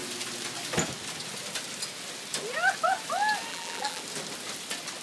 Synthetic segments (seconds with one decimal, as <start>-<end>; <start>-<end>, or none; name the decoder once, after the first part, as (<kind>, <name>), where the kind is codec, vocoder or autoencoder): 3.5-4.0 (vocoder, BigVGAN v2)